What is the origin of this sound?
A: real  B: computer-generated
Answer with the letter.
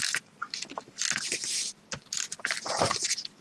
A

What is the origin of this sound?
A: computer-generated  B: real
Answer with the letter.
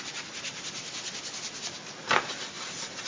B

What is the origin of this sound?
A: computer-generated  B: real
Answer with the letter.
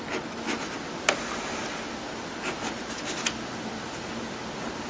B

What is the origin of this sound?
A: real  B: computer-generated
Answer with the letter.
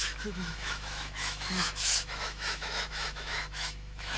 B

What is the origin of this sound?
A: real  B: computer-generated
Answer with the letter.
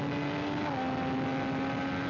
A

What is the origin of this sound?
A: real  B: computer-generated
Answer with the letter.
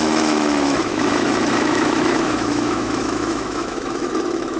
B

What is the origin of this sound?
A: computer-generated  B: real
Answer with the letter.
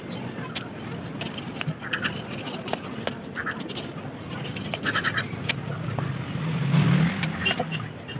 B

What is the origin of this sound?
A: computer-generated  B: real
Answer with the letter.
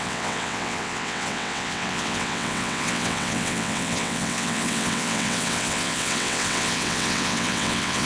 A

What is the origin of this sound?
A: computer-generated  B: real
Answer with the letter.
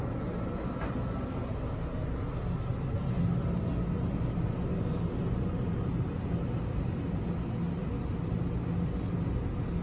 B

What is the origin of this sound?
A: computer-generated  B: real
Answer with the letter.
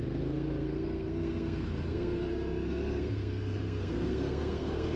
A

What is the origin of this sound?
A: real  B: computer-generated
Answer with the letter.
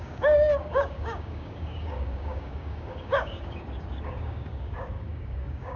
B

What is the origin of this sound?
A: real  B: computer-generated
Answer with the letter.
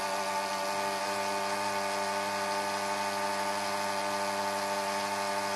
A